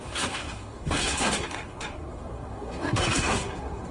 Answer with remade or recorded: remade